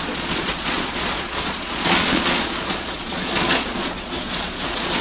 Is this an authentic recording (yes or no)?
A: no